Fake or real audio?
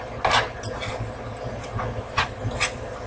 real